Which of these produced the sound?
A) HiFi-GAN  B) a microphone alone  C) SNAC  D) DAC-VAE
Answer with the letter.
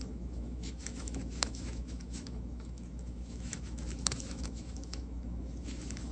D